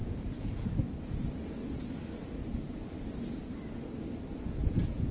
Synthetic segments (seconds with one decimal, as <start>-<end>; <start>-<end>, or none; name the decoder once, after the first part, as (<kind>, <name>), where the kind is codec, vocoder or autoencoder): 0.0-0.7 (vocoder, Vocos); 4.6-5.1